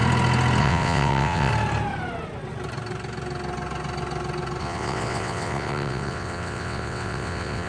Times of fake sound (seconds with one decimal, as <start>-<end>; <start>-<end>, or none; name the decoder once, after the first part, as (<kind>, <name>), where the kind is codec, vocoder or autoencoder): 0.6-1.5 (vocoder, WaveNeXt); 4.6-7.7